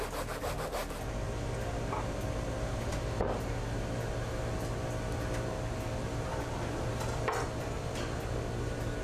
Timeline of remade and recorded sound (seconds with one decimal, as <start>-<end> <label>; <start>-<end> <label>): 0.0-9.0 recorded